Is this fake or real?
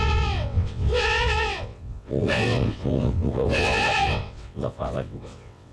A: fake